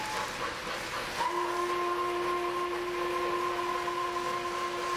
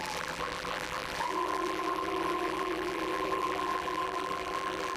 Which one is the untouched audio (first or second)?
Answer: first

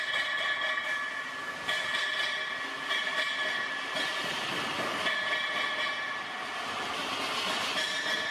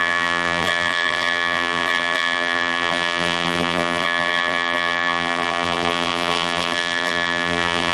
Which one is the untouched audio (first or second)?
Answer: first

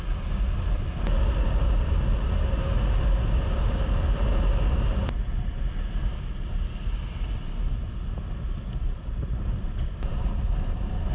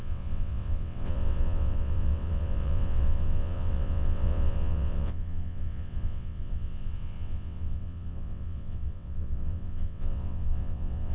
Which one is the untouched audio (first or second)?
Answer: first